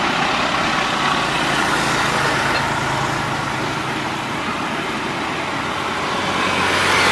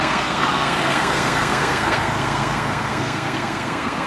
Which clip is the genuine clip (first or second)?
first